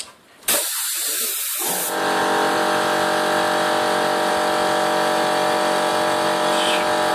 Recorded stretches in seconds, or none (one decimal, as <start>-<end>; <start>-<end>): 0.0-7.1